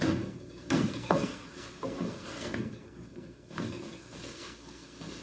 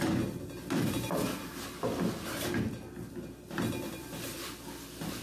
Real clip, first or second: second